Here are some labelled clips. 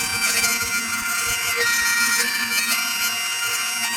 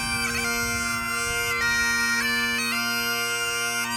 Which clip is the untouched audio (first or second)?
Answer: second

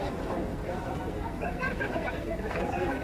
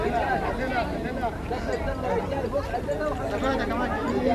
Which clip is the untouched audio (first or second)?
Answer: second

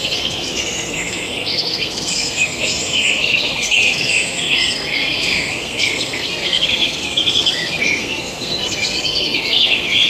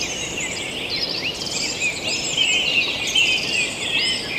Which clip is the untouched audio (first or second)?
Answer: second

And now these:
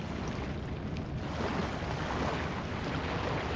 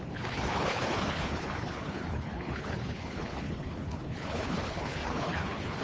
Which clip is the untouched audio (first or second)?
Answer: first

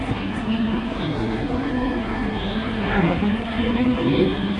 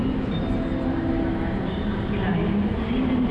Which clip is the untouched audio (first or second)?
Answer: second